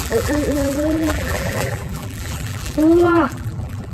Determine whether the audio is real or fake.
fake